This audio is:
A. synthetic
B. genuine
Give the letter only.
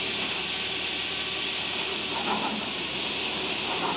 B